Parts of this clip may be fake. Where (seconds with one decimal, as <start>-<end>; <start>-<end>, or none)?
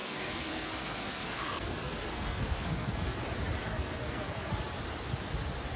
0.0-3.2; 3.6-4.5